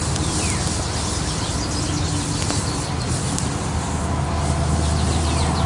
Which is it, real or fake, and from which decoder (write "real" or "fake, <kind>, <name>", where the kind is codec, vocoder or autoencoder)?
real